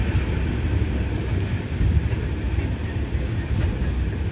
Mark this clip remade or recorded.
recorded